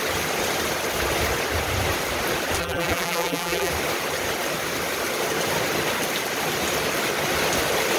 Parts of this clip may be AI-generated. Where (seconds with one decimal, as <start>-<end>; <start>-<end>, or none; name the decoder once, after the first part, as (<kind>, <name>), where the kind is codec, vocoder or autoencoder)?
2.6-3.7 (vocoder, BigVGAN v2)